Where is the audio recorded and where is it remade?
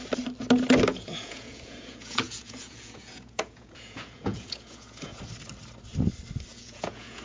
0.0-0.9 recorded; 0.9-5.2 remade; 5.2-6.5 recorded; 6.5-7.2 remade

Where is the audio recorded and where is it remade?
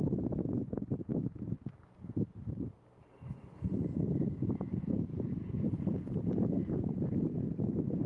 0.0-1.1 remade; 1.1-3.5 recorded; 3.5-8.1 remade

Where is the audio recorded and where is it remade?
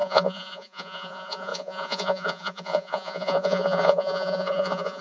0.0-5.0 remade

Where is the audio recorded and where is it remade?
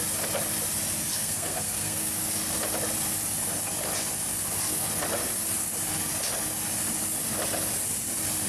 0.0-1.1 recorded; 1.1-2.1 remade; 2.1-8.5 recorded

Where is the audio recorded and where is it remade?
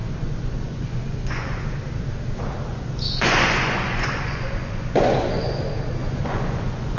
0.0-1.6 remade; 1.6-2.7 recorded; 2.7-5.6 remade; 5.6-6.0 recorded; 6.0-7.0 remade